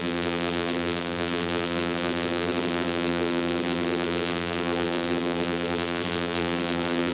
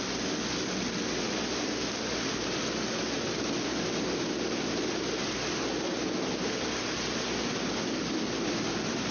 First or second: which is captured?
second